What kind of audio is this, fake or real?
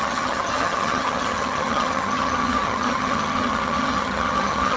fake